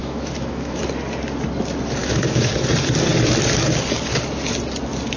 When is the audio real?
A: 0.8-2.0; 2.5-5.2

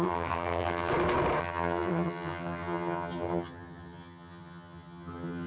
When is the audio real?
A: 0.9-1.4

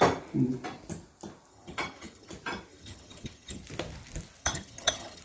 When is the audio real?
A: 0.0-1.5; 2.3-2.7; 3.6-4.4

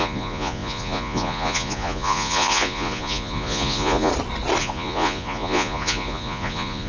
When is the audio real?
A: 4.1-4.6